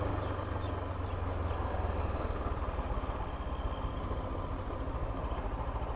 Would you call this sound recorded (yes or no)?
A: yes